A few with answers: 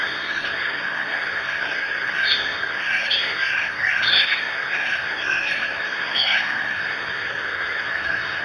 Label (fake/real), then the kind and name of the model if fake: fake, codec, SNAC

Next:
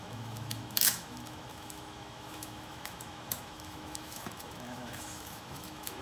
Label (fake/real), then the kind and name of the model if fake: fake, autoencoder, DAC-VAE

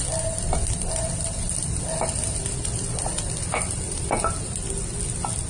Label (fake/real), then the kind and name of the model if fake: real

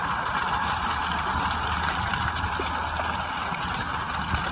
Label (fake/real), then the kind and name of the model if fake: real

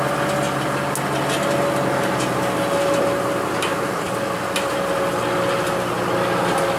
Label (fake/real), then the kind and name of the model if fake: real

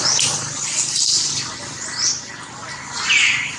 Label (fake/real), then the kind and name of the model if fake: real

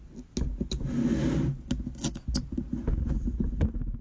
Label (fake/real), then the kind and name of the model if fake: real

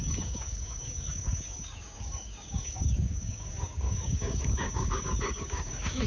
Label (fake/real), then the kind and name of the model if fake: fake, codec, DAC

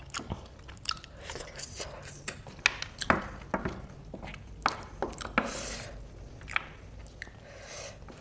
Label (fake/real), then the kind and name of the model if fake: real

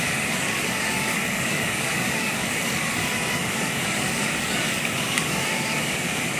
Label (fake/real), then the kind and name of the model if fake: fake, codec, DAC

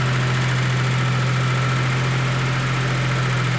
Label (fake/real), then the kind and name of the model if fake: real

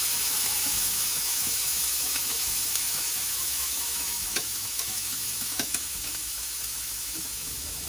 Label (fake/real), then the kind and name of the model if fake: fake, autoencoder, DAC-VAE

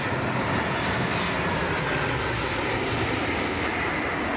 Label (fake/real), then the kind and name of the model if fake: real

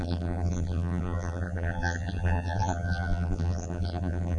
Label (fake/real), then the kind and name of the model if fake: fake, vocoder, BigVGAN v2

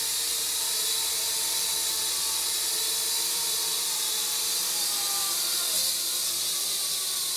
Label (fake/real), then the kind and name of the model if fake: fake, vocoder, BigVGAN v2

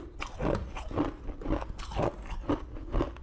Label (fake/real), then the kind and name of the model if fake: real